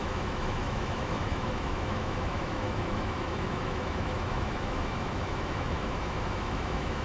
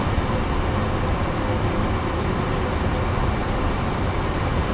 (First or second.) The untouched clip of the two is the second